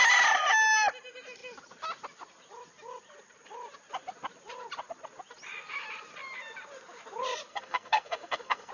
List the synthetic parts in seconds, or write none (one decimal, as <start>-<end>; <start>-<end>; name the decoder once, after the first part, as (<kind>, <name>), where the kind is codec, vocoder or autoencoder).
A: 7.5-8.7 (codec, SNAC)